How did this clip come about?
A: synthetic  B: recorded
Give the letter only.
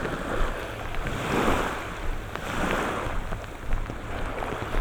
B